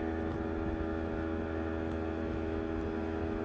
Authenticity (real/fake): real